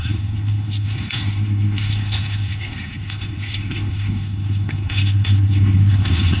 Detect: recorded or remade remade